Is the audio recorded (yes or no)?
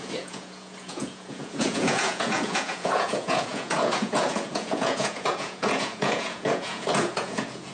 no